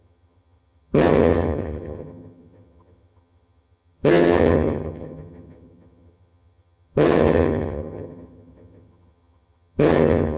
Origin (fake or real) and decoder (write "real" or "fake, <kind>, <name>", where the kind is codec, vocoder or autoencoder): fake, vocoder, HiFi-GAN